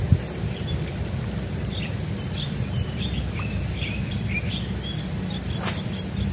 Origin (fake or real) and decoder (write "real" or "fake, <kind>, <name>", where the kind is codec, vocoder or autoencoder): fake, vocoder, BigVGAN v2